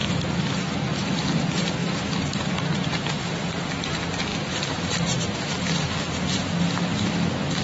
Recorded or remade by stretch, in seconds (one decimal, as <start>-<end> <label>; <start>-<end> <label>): 0.0-7.6 recorded